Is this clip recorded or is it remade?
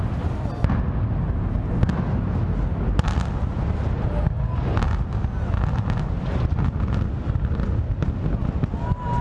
recorded